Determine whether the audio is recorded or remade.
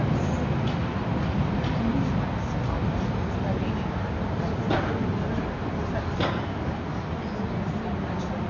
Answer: recorded